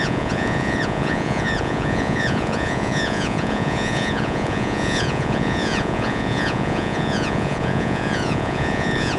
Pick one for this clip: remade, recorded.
remade